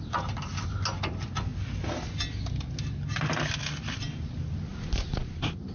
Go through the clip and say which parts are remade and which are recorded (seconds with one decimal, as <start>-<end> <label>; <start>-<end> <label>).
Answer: 0.0-5.7 recorded